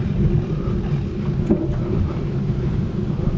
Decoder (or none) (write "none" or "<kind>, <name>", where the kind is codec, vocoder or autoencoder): none